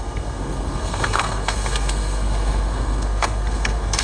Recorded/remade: remade